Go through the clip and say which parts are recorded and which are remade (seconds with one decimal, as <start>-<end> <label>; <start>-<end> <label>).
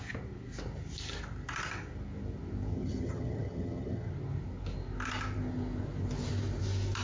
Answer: 0.0-2.7 recorded; 2.7-4.1 remade; 4.1-7.0 recorded